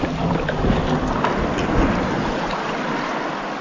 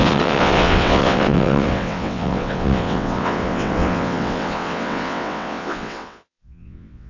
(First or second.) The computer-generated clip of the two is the second